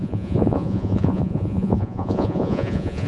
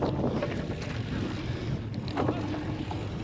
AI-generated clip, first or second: first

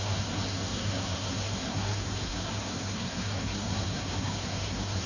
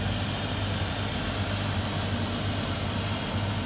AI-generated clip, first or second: first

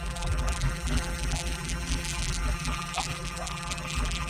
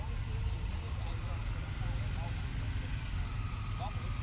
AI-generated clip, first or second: first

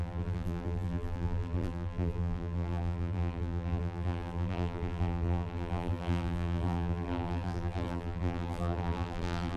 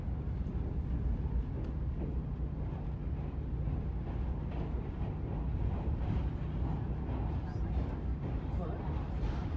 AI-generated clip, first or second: first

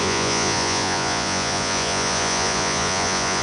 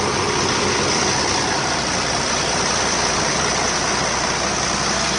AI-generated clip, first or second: first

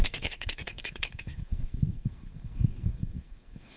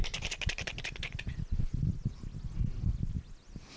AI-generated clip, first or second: first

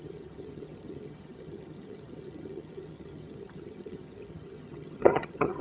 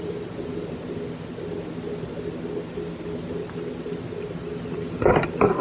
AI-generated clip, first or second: first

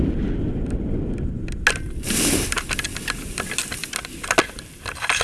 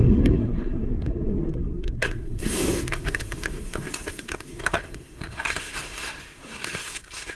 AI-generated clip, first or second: second